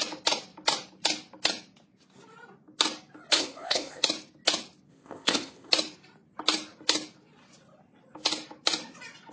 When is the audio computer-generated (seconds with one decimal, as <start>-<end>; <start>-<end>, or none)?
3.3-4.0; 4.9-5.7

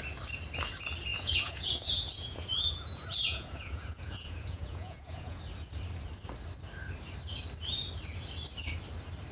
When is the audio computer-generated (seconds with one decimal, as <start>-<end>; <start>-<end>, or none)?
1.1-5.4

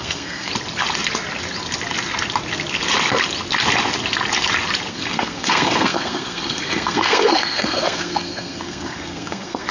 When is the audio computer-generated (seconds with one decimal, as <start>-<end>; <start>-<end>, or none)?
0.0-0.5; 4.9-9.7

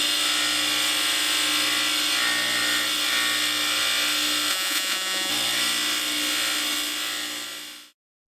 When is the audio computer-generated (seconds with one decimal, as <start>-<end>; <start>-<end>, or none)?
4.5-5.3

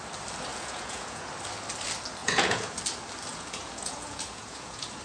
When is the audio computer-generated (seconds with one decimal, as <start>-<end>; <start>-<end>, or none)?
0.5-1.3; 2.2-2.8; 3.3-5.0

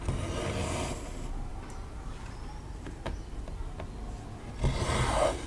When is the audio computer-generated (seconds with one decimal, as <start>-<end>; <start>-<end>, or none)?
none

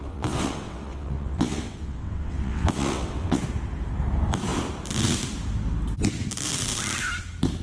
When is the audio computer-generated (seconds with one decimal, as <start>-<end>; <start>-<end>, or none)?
0.0-3.4